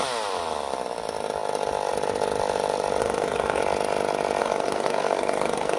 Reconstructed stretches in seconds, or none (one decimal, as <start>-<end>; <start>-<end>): 3.0-3.6; 4.4-5.8